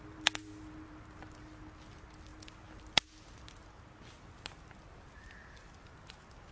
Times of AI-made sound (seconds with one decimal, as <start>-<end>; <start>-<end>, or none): none